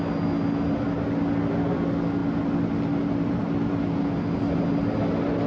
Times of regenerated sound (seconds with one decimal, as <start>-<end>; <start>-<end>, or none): none